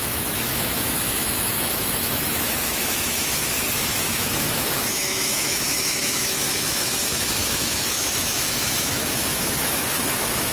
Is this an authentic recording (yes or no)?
no